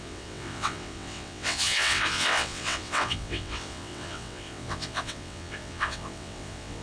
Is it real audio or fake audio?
fake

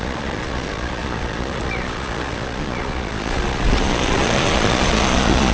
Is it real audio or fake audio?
fake